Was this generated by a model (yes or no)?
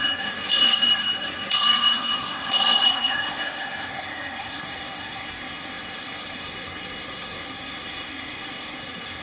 yes